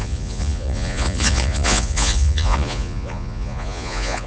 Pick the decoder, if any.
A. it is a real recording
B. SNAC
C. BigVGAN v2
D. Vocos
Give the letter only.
D